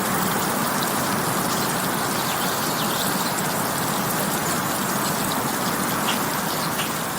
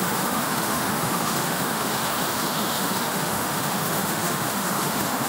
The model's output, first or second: second